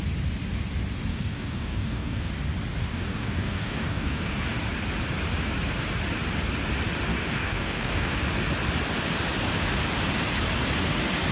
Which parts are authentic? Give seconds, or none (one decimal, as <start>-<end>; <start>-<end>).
0.0-1.1; 2.3-2.8; 4.6-7.1; 8.2-11.3